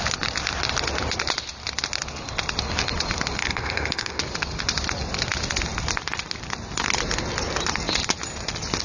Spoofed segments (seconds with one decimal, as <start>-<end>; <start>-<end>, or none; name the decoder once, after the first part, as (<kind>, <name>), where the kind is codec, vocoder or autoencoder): 3.4-4.2 (codec, SNAC)